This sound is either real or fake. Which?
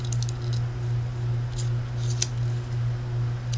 real